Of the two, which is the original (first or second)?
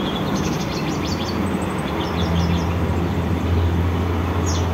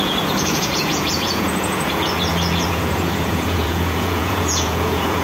first